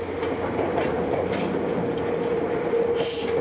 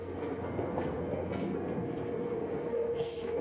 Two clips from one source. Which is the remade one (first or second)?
second